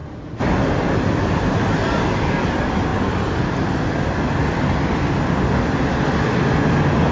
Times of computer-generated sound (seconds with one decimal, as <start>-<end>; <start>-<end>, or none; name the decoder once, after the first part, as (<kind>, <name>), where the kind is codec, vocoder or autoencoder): none